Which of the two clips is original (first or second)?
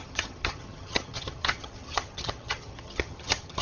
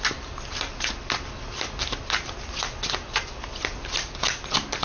second